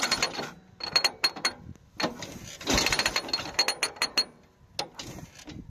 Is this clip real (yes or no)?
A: yes